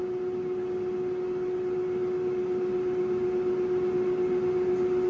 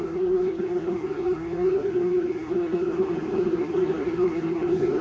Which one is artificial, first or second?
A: second